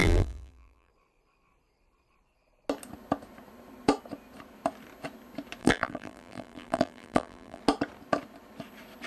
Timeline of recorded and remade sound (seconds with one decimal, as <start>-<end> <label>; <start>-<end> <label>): 0.0-0.9 remade; 0.9-5.6 recorded; 5.6-7.6 remade; 7.6-9.1 recorded